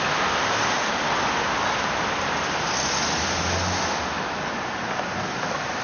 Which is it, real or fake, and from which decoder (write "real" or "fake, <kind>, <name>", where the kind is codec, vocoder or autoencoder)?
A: real